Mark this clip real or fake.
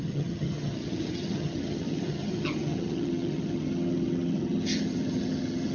fake